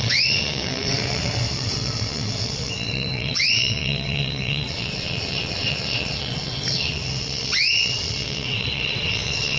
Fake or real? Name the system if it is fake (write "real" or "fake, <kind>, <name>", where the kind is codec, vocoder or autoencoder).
fake, vocoder, WaveNeXt